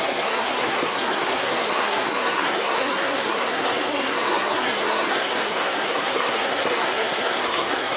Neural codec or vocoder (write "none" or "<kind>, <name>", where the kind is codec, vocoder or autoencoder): codec, SNAC